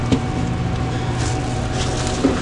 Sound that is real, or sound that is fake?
real